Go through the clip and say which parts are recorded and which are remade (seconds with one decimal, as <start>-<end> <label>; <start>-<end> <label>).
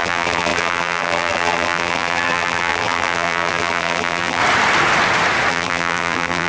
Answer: 0.0-4.4 remade; 4.4-5.5 recorded; 5.5-6.5 remade